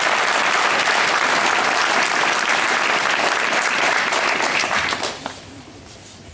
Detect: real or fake fake